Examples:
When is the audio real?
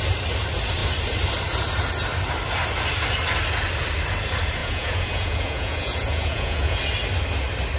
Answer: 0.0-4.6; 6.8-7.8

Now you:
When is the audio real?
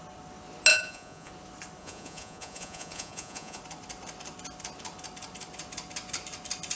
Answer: 0.0-0.7; 1.3-1.8; 3.6-6.8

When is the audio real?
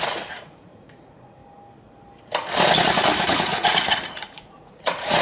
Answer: 1.4-3.3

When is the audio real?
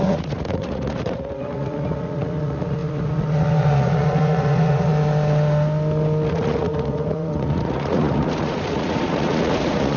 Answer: 4.9-6.3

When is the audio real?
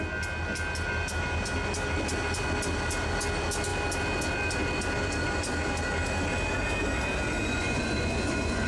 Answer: 0.0-7.4